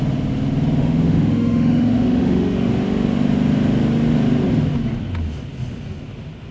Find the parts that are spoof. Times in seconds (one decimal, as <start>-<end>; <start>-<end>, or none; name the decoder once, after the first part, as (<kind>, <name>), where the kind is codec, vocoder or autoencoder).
0.8-2.7 (autoencoder, DAC-VAE)